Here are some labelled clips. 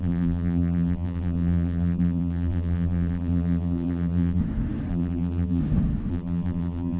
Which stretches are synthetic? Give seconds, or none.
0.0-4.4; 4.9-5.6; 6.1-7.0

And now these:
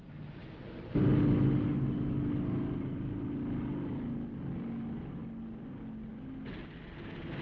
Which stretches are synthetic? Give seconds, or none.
none

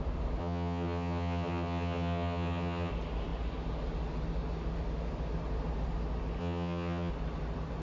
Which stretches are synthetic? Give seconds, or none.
0.4-2.9; 6.4-7.1

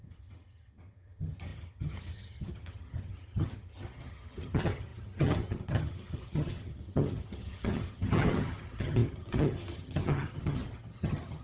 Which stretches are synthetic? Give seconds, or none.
0.0-11.4

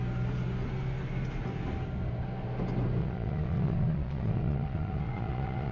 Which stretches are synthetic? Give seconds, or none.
3.0-5.7

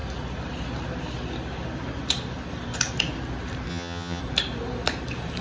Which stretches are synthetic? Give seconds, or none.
3.7-4.2